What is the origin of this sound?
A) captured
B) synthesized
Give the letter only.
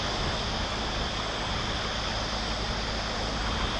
A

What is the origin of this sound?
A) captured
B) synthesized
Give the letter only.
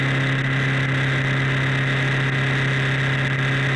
A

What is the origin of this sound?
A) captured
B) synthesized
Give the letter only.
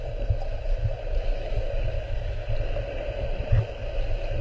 A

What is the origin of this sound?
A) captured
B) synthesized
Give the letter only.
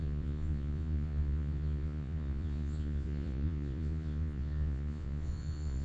B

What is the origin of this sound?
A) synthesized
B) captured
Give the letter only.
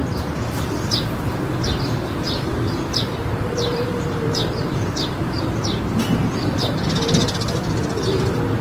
A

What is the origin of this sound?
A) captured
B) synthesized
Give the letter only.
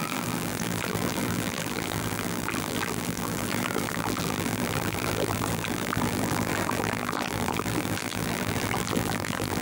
B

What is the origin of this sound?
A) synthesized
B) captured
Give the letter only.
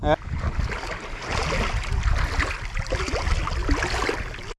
B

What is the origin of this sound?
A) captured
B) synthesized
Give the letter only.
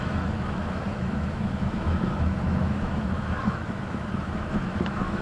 B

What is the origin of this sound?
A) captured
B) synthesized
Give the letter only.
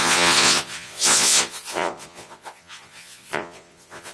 B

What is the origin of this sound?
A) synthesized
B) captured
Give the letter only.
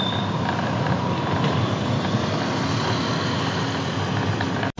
B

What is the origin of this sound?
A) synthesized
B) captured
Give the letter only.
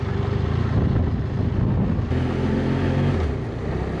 B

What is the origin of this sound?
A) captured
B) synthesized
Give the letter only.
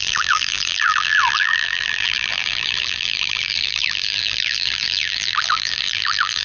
B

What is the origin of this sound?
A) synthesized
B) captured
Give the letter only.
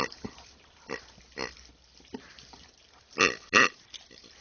B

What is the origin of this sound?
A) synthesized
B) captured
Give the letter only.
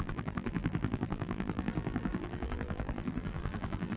A